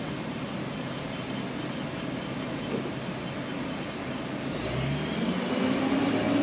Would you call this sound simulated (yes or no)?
no